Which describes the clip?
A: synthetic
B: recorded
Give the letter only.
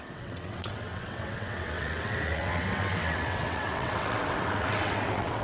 A